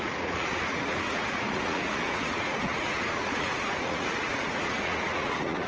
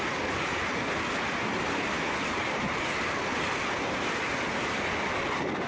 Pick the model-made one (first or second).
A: first